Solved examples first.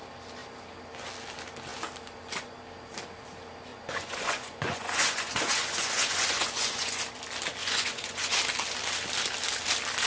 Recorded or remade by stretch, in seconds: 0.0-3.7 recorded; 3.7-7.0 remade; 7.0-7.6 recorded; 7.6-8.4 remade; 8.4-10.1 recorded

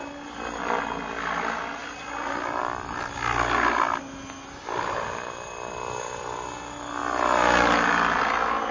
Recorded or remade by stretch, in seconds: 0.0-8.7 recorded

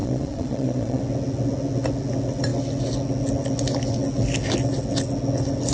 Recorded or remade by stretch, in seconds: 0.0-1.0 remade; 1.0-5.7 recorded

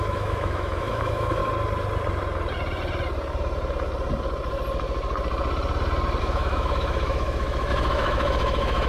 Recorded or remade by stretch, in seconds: 0.0-1.4 remade; 1.4-6.2 recorded; 6.2-8.9 remade

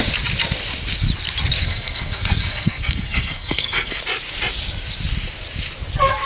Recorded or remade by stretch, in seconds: 0.0-1.6 recorded; 1.6-4.0 remade; 4.0-6.3 recorded